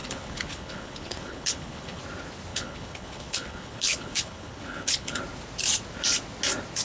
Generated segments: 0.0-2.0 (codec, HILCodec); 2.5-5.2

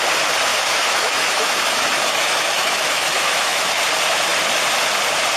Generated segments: 0.5-3.7 (autoencoder, DAC-VAE)

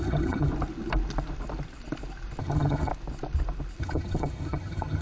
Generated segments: 0.0-0.5 (vocoder, HiFi-GAN); 2.4-2.9; 3.8-5.0

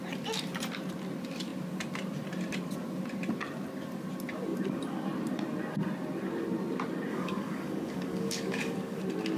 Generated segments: 7.1-9.0 (codec, DAC)